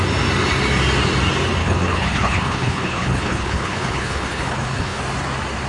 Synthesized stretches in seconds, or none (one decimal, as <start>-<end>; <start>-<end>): 1.6-5.0